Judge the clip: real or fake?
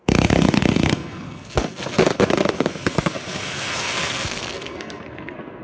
fake